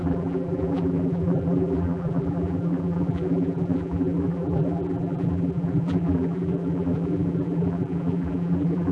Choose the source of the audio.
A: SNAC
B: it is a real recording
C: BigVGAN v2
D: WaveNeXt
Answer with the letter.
C